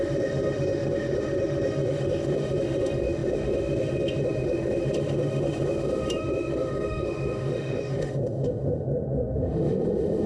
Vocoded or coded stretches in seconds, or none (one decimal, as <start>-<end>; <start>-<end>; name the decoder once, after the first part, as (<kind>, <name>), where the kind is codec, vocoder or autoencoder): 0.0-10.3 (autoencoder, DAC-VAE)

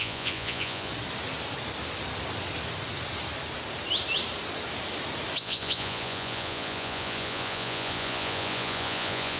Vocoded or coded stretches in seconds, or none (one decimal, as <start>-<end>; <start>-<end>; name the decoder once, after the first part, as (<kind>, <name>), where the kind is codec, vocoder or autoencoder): 0.0-0.9 (vocoder, Vocos); 5.4-9.4

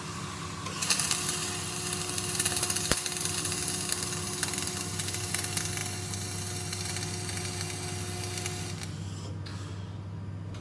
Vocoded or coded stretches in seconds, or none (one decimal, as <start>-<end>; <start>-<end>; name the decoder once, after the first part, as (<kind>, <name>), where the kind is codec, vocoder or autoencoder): none